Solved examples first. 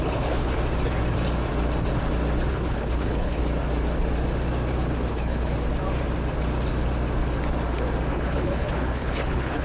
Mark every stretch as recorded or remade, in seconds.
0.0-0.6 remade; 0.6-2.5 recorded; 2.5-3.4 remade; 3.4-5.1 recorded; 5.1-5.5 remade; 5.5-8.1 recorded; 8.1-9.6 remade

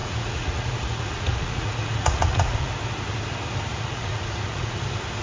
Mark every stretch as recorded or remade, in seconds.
0.0-2.7 remade; 2.7-3.7 recorded; 3.7-4.8 remade; 4.8-5.2 recorded

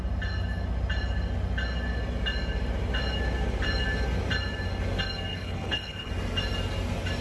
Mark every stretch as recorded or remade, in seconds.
0.0-5.3 recorded; 5.3-6.1 remade; 6.1-7.2 recorded

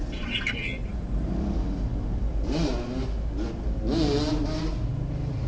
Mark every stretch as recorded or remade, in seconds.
0.0-0.8 recorded; 0.8-1.3 remade; 1.3-5.5 recorded

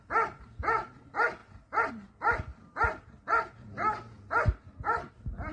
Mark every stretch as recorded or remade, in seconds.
0.0-5.5 recorded

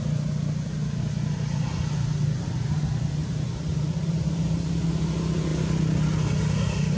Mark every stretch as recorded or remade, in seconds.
0.0-7.0 recorded